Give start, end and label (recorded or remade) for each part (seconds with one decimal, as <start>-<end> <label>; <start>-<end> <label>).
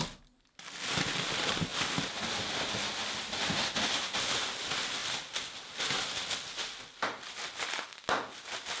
0.0-8.8 recorded